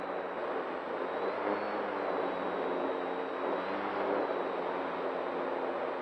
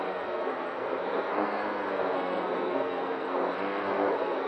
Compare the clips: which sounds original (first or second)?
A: first